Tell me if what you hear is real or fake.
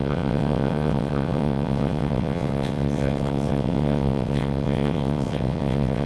fake